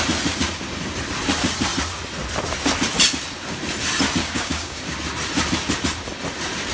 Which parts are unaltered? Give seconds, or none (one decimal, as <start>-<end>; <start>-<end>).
0.0-4.2; 4.8-6.7